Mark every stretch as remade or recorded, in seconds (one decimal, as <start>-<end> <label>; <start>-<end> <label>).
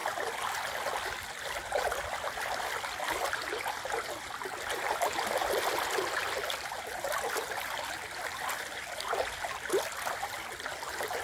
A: 0.0-11.2 recorded